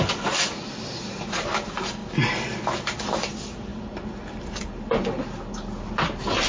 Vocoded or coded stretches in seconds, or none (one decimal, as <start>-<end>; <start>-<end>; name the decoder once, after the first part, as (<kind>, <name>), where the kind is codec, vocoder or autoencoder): none